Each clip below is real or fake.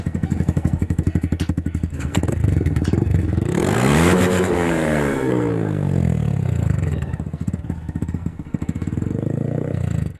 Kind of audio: fake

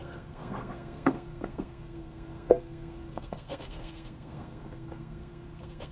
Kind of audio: fake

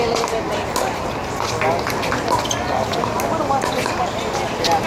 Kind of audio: real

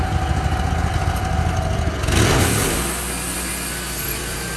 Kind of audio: real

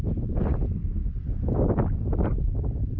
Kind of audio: real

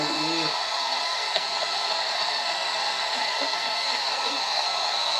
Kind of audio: fake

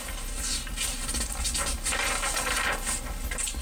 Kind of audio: real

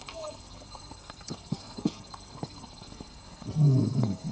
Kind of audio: fake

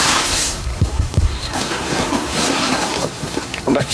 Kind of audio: fake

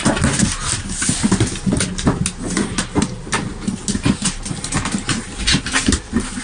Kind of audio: real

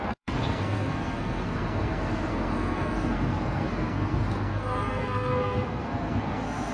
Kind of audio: fake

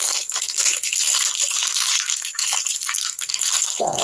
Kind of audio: fake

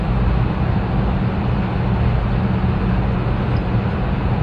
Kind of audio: real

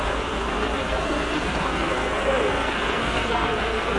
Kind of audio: fake